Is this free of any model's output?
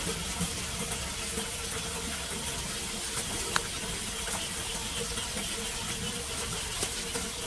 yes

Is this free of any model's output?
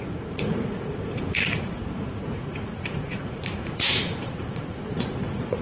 no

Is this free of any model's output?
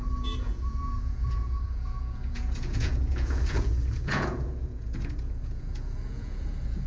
no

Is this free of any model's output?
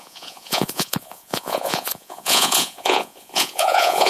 no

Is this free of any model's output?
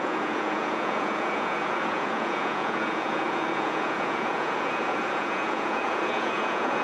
no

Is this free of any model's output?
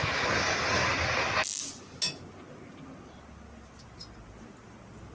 yes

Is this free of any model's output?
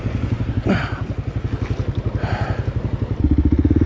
yes